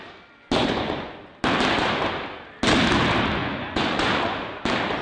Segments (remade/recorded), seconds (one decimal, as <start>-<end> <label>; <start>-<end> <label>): 0.0-0.6 recorded; 0.6-1.2 remade; 1.2-3.4 recorded; 3.4-4.6 remade; 4.6-5.0 recorded

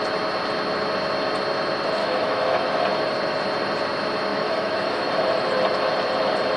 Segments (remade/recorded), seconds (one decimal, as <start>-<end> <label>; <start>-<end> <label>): 0.0-2.0 recorded; 2.0-2.8 remade; 2.8-4.3 recorded; 4.3-5.1 remade; 5.1-6.6 recorded